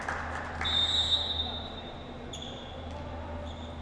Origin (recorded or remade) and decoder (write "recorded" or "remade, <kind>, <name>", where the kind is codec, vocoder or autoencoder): recorded